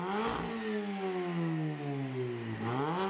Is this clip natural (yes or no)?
yes